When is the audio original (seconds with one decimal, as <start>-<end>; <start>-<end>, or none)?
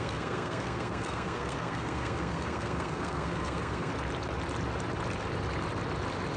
3.9-6.4